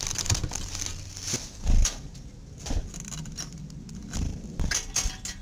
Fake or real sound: real